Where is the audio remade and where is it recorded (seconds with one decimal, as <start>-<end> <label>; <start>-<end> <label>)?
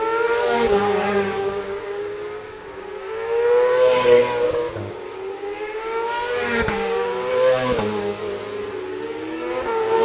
0.0-8.2 remade; 8.2-8.9 recorded; 8.9-10.0 remade